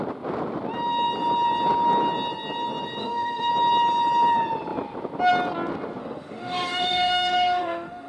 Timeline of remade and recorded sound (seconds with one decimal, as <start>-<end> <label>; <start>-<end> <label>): 0.0-3.0 recorded; 3.0-3.5 remade; 3.5-6.0 recorded; 6.0-8.1 remade